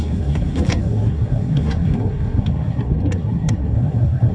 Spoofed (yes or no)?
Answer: yes